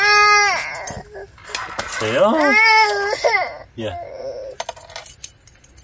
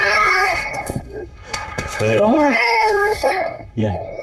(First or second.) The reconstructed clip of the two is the second